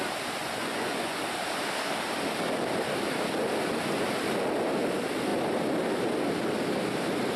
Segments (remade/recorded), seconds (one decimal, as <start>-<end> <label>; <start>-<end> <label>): 0.0-0.4 recorded; 0.4-1.2 remade; 1.2-7.4 recorded

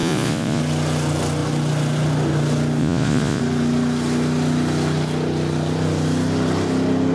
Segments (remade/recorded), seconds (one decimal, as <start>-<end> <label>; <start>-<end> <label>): 0.0-0.6 remade; 0.6-2.8 recorded; 2.8-3.4 remade; 3.4-7.1 recorded

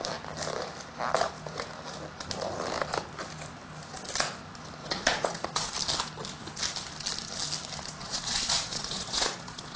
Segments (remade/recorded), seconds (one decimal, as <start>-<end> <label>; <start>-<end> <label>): 0.0-4.8 recorded; 4.8-5.7 remade; 5.7-8.0 recorded; 8.0-9.8 remade

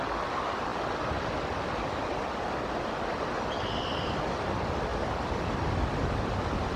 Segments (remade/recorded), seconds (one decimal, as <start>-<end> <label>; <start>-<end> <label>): 0.0-6.8 recorded

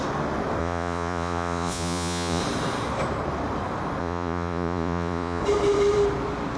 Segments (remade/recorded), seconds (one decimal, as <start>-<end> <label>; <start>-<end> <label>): 0.0-0.6 recorded; 0.6-2.4 remade; 2.4-4.0 recorded; 4.0-5.4 remade; 5.4-6.6 recorded

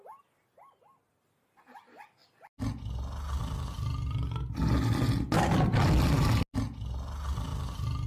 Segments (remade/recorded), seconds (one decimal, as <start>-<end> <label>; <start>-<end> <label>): 0.0-8.1 recorded